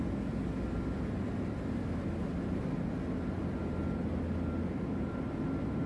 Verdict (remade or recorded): recorded